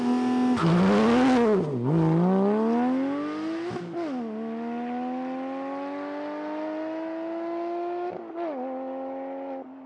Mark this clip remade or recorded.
recorded